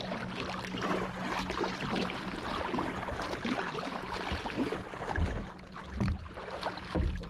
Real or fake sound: real